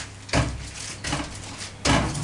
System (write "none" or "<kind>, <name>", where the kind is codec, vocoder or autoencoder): none